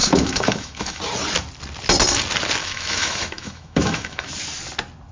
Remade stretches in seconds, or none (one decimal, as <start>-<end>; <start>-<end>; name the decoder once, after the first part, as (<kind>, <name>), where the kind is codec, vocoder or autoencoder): 0.0-1.0 (autoencoder, DAC-VAE); 2.6-4.3